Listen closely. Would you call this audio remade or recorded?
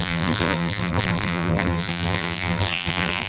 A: remade